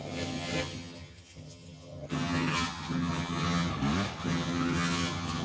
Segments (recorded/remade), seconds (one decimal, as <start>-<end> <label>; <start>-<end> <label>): 0.0-3.7 remade; 3.7-4.2 recorded; 4.2-5.4 remade